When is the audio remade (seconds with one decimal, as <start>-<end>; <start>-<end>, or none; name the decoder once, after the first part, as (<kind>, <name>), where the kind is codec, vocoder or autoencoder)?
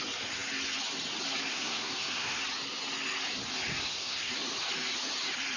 1.5-2.4 (codec, SNAC); 3.7-4.3